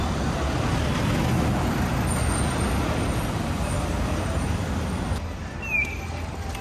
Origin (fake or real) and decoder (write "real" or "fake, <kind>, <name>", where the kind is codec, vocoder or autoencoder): real